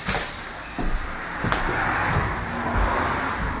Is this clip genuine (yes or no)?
yes